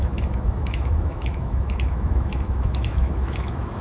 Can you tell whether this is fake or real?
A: fake